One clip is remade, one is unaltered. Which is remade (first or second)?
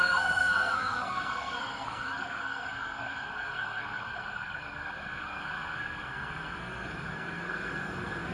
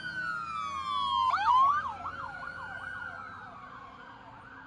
first